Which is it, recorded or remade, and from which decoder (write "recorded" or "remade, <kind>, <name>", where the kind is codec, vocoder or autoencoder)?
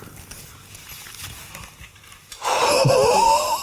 recorded